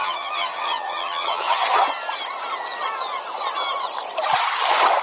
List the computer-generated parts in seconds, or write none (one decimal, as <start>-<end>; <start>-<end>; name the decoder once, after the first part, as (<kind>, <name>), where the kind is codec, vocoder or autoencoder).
0.0-1.8 (vocoder, HiFi-GAN)